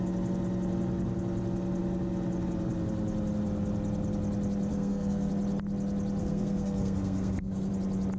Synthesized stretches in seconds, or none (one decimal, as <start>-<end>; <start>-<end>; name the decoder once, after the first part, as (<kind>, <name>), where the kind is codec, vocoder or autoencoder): 4.7-5.3 (codec, SNAC); 6.2-7.7